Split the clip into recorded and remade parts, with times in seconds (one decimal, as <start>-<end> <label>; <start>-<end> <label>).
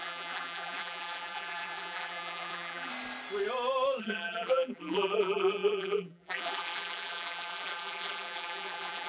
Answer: 0.0-2.9 remade; 2.9-4.0 recorded; 4.0-9.1 remade